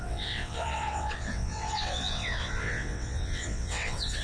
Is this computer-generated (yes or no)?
yes